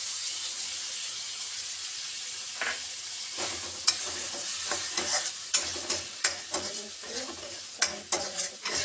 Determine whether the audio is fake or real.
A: fake